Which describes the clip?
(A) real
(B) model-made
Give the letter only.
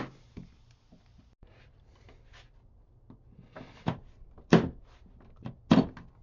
A